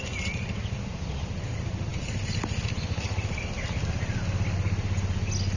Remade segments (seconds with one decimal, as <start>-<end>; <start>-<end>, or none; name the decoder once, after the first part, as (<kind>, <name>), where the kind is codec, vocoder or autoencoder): none